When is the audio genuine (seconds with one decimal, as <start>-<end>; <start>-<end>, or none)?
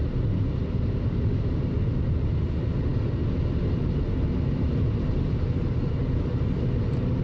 0.0-7.2